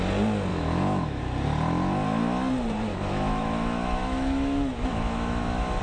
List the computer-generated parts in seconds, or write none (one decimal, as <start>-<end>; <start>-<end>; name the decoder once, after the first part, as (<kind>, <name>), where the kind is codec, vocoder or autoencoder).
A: 0.5-1.2 (autoencoder, DAC-VAE); 2.9-5.8

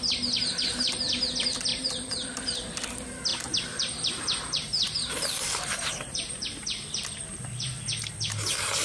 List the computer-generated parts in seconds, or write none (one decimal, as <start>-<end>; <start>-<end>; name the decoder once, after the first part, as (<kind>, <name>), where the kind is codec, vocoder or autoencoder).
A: 1.7-2.9 (vocoder, BigVGAN v2); 3.3-7.8

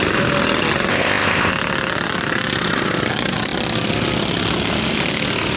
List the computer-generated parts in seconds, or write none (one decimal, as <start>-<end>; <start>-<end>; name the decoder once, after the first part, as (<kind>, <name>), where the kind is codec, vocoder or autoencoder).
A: 0.9-1.5 (codec, ZipCodec)

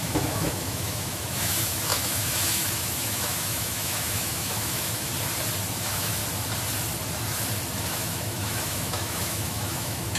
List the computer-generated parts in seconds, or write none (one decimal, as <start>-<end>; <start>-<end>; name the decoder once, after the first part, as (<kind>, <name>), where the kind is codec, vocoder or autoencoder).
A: 0.0-5.1 (autoencoder, DAC-VAE); 5.7-6.2; 7.8-10.2

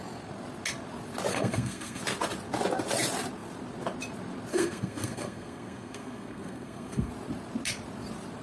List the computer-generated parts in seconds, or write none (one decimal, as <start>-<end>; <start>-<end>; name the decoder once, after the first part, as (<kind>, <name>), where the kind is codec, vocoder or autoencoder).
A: 1.3-2.0 (codec, SNAC); 4.5-7.1

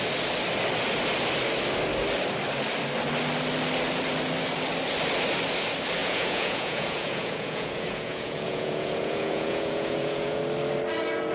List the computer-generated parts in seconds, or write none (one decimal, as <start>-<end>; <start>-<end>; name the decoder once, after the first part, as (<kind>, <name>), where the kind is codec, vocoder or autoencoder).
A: 6.0-10.4 (vocoder, Vocos)

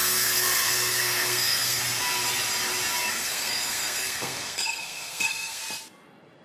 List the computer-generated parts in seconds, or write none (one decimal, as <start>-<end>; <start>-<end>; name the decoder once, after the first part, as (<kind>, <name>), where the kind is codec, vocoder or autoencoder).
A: 0.0-1.8 (codec, SNAC); 3.1-5.6

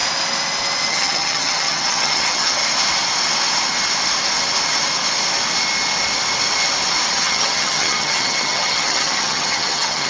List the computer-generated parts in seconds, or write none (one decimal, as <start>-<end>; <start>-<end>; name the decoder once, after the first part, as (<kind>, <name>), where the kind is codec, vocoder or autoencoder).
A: 0.9-2.6 (vocoder, HiFi-GAN); 7.1-10.1